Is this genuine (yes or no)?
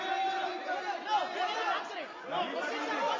yes